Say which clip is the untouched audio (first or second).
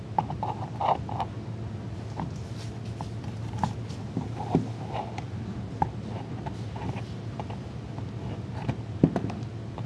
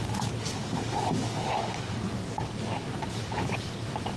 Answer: first